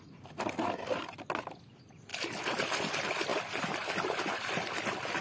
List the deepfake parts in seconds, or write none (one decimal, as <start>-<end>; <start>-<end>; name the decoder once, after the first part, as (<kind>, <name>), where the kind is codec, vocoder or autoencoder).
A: none